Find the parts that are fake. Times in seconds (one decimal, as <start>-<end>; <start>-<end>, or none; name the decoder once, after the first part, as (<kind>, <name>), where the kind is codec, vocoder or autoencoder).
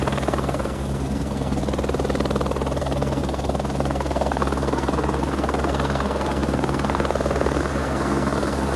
0.0-1.6 (codec, SNAC); 2.8-8.8